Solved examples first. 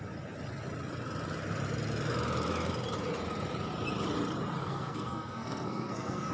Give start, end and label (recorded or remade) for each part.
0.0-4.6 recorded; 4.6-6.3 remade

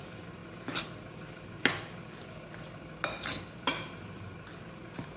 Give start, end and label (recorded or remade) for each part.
0.0-0.4 remade; 0.4-3.5 recorded; 3.5-5.2 remade

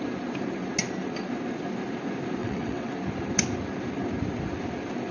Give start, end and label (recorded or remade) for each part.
0.0-2.4 recorded; 2.4-2.9 remade; 2.9-5.1 recorded